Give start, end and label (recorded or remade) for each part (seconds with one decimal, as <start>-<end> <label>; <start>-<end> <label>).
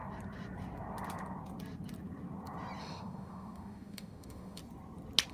0.0-2.8 recorded; 2.8-4.6 remade; 4.6-5.3 recorded